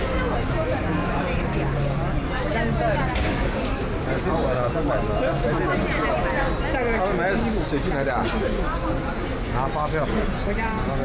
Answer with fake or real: real